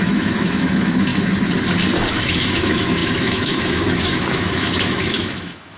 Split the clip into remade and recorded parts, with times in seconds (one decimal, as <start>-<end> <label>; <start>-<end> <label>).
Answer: 0.0-1.1 remade; 1.1-2.1 recorded; 2.1-5.8 remade